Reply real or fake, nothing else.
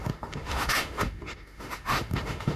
fake